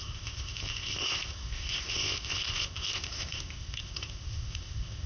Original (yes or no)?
no